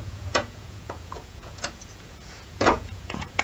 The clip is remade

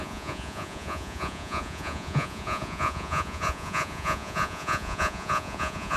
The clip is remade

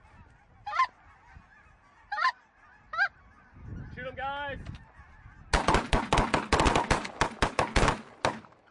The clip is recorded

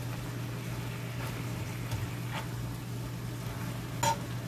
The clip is recorded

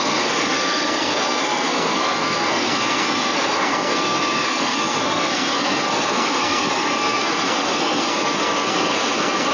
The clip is remade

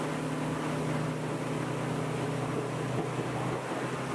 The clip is recorded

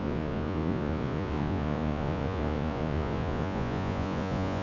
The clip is remade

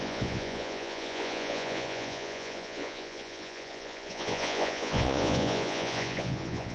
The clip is remade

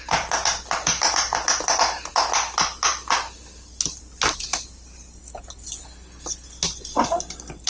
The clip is recorded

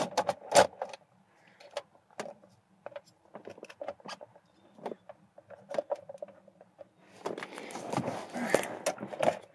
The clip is recorded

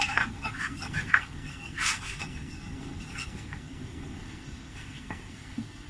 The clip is remade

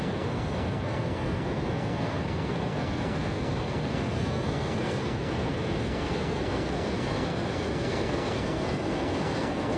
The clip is remade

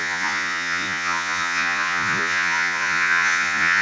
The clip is remade